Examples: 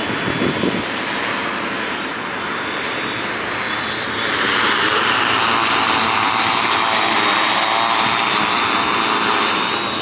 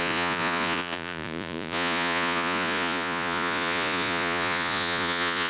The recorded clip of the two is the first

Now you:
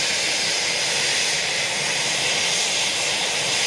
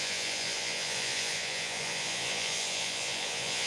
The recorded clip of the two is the first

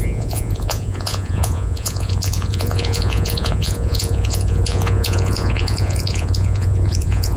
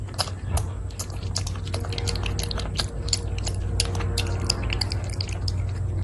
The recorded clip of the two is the second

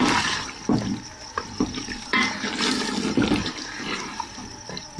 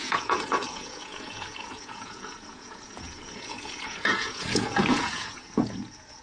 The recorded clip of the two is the first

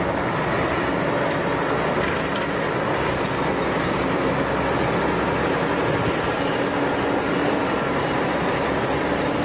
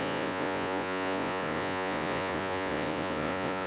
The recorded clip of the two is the first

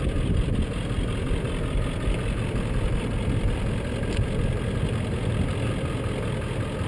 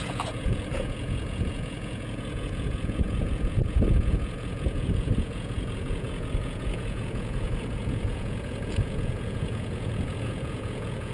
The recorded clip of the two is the first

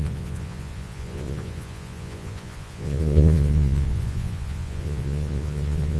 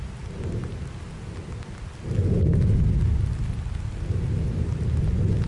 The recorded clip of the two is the second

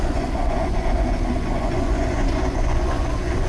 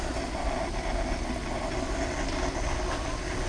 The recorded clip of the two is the second